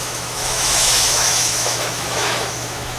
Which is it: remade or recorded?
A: remade